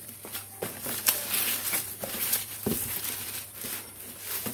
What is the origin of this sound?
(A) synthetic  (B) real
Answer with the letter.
A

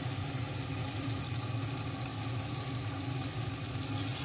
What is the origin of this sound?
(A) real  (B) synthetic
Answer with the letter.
A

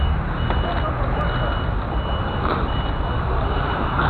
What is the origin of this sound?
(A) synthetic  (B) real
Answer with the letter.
B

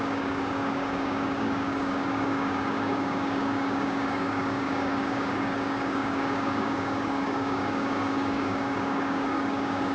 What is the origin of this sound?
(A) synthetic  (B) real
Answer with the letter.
A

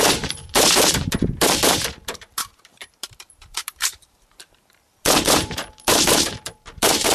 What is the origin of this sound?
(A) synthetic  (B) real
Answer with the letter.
A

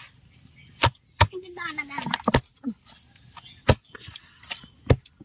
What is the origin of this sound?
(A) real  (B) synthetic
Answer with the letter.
A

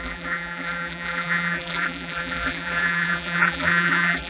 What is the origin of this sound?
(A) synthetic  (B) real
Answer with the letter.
A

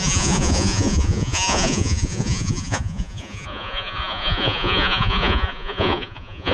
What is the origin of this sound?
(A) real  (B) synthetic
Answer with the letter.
B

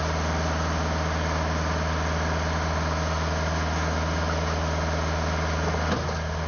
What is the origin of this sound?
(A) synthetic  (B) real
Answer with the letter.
B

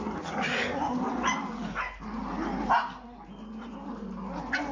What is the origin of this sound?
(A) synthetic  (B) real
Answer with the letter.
B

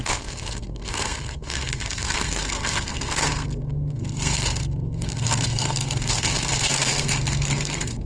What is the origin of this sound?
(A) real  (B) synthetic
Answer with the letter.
B